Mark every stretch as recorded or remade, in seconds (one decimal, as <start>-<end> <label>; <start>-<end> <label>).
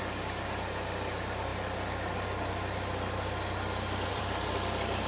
0.0-4.1 recorded; 4.1-5.1 remade